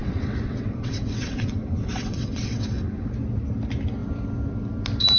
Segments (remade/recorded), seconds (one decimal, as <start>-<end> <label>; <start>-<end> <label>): 0.0-3.1 remade; 3.1-5.2 recorded